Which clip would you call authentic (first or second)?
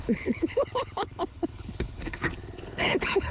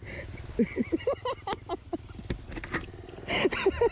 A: second